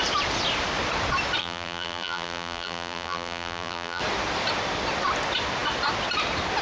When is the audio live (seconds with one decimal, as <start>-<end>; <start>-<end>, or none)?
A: 0.0-1.4; 4.0-6.6